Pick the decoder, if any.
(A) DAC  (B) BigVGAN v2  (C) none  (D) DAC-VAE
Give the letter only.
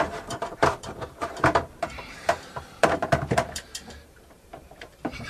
B